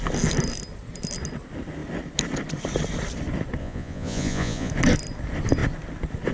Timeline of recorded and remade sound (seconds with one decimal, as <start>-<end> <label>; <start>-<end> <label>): 0.0-3.6 recorded; 3.6-4.7 remade; 4.7-6.3 recorded